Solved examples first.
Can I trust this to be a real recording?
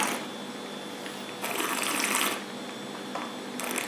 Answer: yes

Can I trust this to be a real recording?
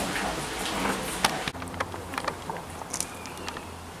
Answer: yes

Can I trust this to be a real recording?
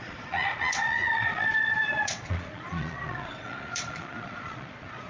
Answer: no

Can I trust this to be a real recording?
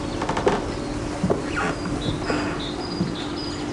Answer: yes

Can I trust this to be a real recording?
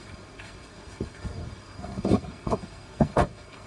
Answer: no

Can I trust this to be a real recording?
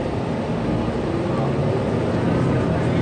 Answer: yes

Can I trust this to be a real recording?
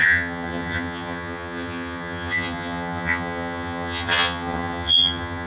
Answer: no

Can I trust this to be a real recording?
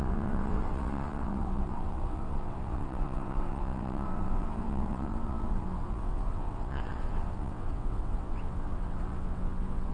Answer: no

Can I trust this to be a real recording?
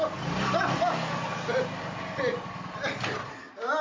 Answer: yes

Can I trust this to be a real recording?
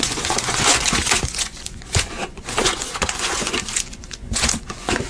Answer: no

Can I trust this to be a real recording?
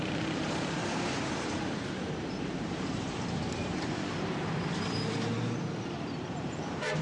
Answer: no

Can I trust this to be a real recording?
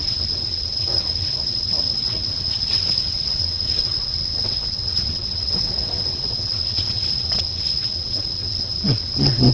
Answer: no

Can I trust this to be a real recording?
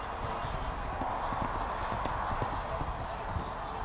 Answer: yes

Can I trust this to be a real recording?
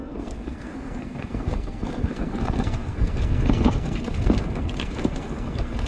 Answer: no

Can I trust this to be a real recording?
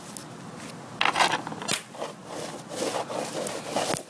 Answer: yes